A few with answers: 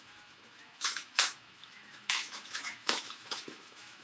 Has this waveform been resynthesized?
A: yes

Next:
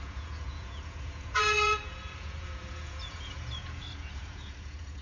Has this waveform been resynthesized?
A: yes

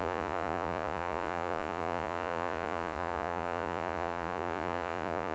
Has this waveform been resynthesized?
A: yes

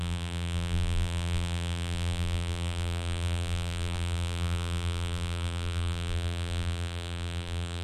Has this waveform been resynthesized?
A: yes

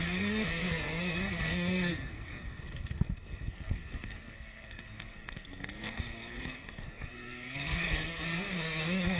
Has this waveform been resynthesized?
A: yes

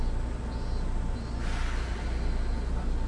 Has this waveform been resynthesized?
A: no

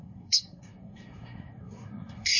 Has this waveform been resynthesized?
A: yes